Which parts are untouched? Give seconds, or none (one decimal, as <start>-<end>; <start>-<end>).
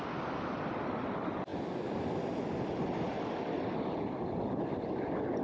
0.0-5.4